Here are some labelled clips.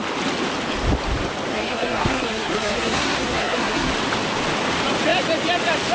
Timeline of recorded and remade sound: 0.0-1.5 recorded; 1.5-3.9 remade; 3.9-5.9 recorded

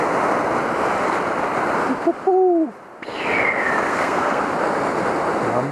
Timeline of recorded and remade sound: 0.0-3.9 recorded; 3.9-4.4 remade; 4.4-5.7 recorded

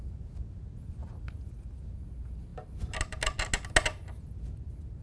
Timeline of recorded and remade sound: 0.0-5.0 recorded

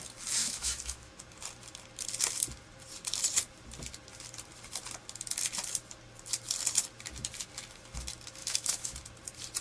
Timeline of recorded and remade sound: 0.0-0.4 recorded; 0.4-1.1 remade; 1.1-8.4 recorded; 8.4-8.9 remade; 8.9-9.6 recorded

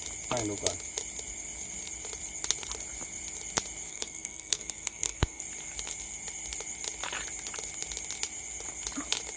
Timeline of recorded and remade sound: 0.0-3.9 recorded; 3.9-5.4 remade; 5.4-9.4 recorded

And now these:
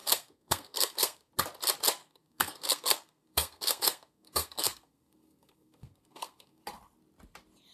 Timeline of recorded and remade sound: 0.0-1.3 remade; 1.3-2.0 recorded; 2.0-6.6 remade; 6.6-7.7 recorded

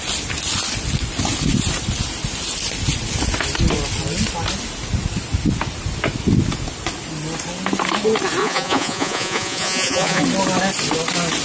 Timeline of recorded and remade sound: 0.0-8.4 recorded; 8.4-10.2 remade; 10.2-11.4 recorded